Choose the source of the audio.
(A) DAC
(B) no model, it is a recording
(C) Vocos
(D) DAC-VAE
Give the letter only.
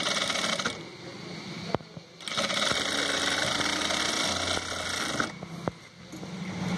B